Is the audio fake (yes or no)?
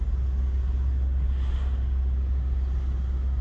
no